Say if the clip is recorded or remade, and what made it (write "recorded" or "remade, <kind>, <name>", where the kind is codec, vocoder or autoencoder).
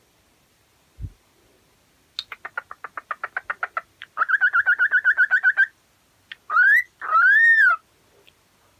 recorded